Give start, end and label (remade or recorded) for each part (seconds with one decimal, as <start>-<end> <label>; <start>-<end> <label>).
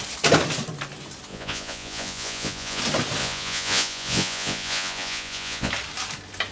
0.0-1.3 recorded; 1.3-2.8 remade; 2.8-3.2 recorded; 3.2-5.7 remade; 5.7-6.5 recorded